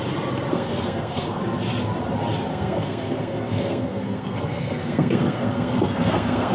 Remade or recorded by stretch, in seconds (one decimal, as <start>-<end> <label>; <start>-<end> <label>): 0.0-0.5 recorded; 0.5-1.4 remade; 1.4-2.5 recorded; 2.5-6.5 remade